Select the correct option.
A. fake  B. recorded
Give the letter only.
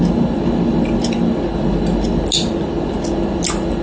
B